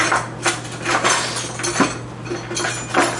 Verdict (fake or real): real